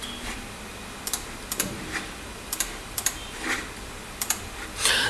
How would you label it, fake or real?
fake